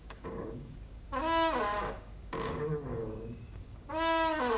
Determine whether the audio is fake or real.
fake